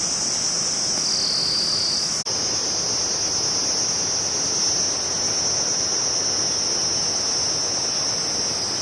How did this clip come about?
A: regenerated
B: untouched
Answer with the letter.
B